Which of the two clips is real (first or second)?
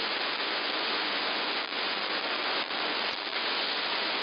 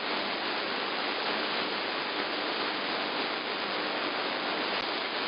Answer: second